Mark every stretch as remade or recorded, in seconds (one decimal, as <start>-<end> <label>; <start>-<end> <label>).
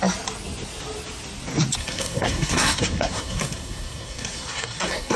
0.0-1.8 recorded; 1.8-5.2 remade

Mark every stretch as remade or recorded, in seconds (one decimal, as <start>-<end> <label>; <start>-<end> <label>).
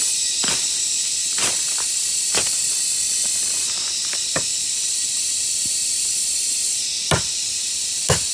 0.0-8.3 recorded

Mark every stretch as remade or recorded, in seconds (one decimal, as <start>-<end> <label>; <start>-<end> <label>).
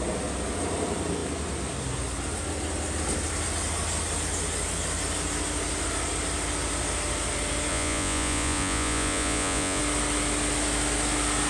0.0-7.7 recorded; 7.7-9.8 remade; 9.8-11.5 recorded